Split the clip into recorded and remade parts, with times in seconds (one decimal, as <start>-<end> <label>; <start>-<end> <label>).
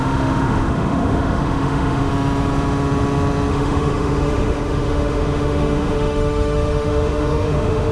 0.0-2.1 remade; 2.1-3.5 recorded; 3.5-7.9 remade